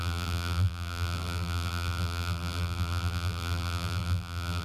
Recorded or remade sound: remade